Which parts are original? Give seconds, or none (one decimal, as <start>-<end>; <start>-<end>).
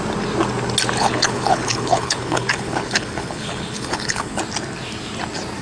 0.0-1.0; 4.4-5.6